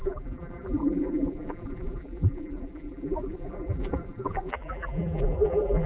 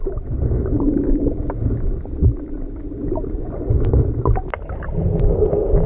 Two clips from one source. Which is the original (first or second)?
second